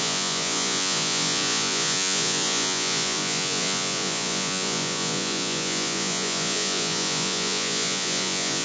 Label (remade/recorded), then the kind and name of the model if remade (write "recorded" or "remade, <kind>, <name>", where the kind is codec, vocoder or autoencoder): remade, vocoder, Vocos